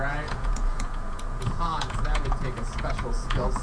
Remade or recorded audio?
remade